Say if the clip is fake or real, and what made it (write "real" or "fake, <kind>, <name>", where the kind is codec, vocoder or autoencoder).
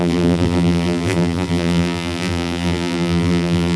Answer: fake, vocoder, BigVGAN v2